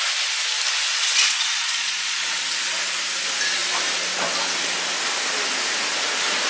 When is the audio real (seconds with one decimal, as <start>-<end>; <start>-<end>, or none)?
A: 0.0-0.9; 2.4-6.5